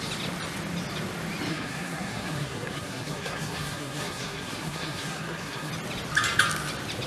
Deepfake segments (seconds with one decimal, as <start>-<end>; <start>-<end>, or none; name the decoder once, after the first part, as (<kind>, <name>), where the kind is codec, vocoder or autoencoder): 1.5-5.7 (codec, SNAC)